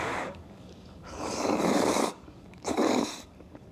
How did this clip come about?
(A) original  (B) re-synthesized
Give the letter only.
B